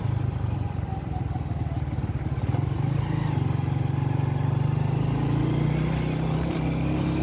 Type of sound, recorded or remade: recorded